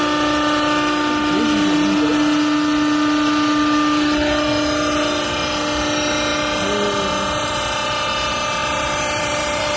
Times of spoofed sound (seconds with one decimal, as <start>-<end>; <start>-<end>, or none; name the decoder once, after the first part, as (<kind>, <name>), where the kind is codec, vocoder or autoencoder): 8.6-9.8 (vocoder, BigVGAN v2)